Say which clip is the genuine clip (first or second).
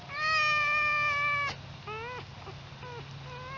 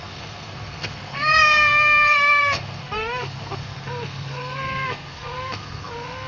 first